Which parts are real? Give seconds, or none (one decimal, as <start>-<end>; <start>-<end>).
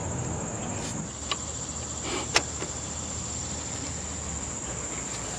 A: 0.0-2.2; 3.4-4.5